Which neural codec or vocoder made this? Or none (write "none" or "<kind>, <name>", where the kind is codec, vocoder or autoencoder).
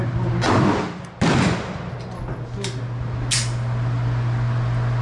none